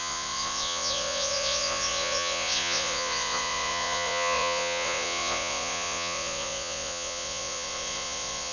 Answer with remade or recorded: remade